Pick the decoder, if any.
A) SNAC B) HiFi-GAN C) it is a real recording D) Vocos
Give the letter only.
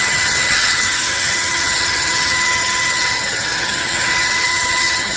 B